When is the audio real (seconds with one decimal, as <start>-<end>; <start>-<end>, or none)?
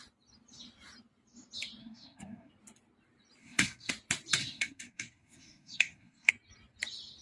0.0-1.8; 2.5-3.4; 3.9-4.4; 6.3-7.2